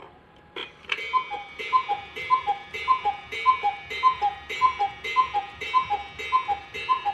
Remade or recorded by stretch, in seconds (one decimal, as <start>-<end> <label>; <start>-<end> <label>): 0.0-6.0 remade; 6.0-6.6 recorded; 6.6-7.1 remade